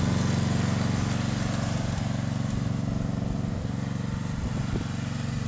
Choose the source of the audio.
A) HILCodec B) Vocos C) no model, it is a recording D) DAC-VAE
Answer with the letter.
C